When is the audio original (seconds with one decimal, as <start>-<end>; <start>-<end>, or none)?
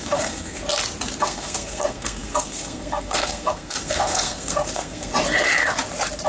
0.6-1.2; 5.1-6.3